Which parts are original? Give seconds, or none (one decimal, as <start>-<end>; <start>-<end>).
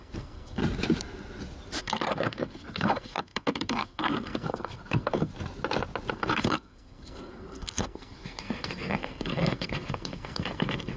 0.6-1.8; 5.3-6.1